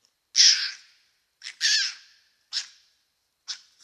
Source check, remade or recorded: recorded